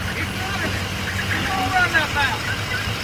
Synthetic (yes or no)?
no